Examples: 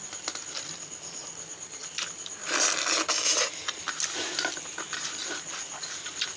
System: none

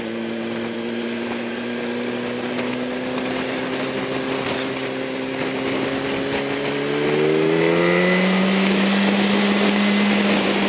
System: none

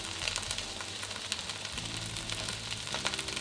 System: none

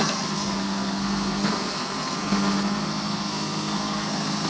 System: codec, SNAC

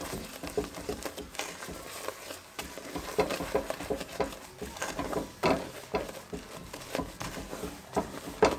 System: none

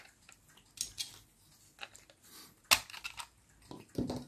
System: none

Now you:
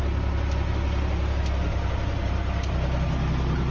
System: none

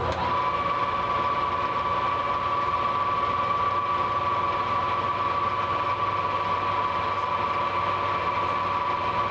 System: none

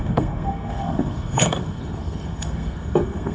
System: codec, SNAC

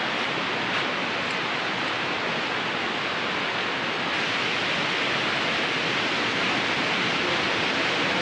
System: none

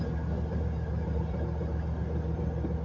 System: none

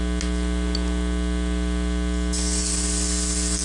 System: none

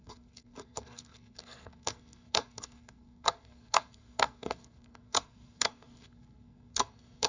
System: codec, SNAC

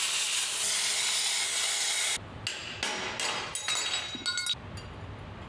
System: none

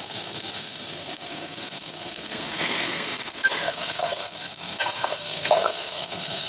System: codec, SNAC